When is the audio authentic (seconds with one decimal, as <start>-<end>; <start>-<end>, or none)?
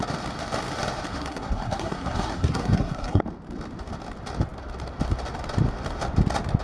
0.0-1.1; 3.2-6.6